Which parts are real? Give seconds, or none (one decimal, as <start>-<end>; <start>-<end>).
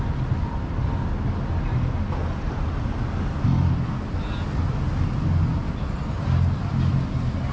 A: 0.0-7.5